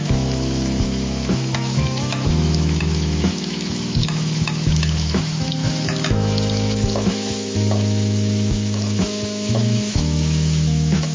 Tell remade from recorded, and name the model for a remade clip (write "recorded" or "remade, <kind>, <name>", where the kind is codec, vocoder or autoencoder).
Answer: remade, autoencoder, DAC-VAE